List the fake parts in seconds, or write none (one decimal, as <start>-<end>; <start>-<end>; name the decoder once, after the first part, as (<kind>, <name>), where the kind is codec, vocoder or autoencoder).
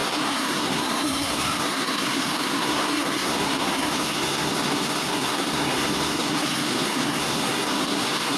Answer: 0.0-8.4 (codec, SNAC)